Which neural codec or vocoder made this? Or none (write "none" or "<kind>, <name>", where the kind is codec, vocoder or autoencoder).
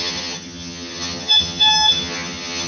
vocoder, HiFi-GAN